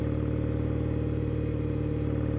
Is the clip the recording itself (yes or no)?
yes